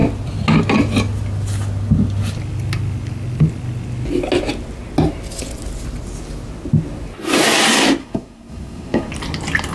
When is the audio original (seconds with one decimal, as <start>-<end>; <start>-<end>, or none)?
0.0-8.0; 9.1-9.7